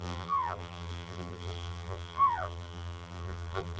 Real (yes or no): no